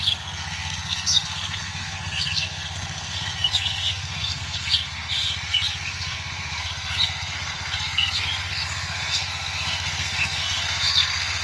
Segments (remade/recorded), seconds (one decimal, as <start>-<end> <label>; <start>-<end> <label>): 0.0-11.4 remade